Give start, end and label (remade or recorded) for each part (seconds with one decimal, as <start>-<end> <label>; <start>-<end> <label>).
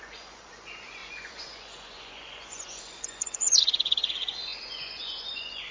0.0-5.7 remade